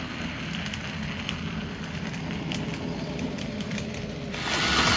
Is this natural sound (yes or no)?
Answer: yes